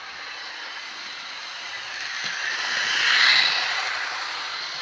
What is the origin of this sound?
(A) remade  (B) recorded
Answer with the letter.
B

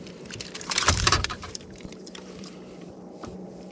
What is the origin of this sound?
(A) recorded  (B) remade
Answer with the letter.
B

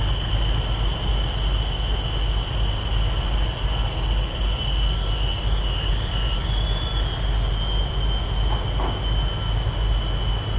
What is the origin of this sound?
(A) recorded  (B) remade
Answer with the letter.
A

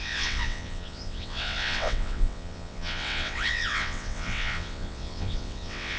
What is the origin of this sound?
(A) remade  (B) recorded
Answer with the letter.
A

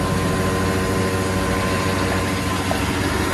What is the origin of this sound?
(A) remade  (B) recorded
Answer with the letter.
B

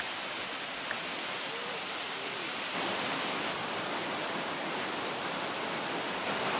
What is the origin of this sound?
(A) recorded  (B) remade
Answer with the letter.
B